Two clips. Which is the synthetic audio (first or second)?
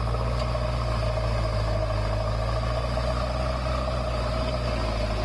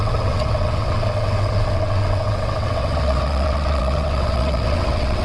second